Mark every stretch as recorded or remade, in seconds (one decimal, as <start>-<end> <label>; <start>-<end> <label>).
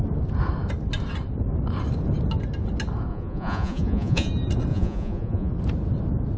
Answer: 0.0-3.1 recorded; 3.1-4.3 remade; 4.3-4.7 recorded; 4.7-5.5 remade; 5.5-6.4 recorded